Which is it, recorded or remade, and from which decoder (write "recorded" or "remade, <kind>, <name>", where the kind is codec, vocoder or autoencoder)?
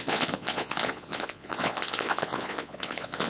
remade, vocoder, Vocos